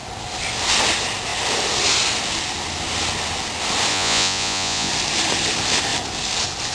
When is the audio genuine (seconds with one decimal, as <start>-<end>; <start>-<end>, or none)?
0.0-3.9; 4.9-6.7